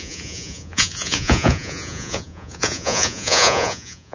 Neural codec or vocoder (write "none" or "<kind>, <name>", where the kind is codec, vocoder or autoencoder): vocoder, Vocos